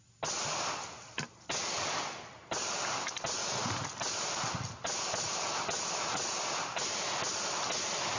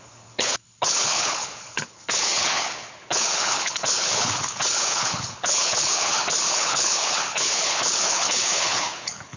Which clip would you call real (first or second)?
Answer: first